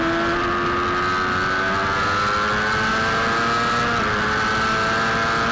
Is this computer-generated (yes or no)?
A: no